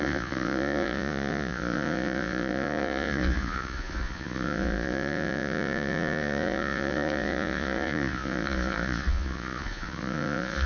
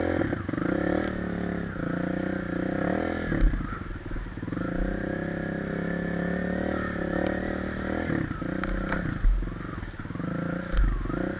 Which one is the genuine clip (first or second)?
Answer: second